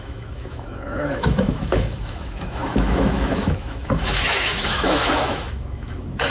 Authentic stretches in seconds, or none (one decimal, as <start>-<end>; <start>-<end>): none